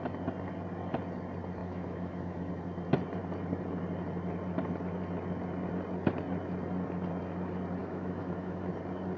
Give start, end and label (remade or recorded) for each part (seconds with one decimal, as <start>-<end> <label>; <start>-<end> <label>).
0.0-1.6 recorded; 1.6-2.5 remade; 2.5-7.8 recorded; 7.8-8.7 remade; 8.7-9.2 recorded